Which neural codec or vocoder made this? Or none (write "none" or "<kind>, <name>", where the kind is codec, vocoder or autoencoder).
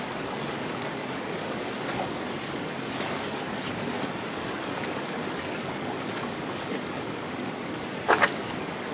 codec, DAC